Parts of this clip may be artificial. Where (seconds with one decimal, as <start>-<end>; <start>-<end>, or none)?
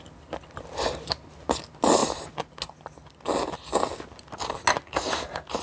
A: none